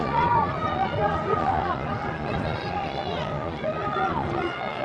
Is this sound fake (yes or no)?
yes